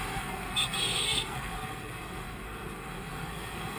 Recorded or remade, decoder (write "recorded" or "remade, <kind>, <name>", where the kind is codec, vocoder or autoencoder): remade, codec, SNAC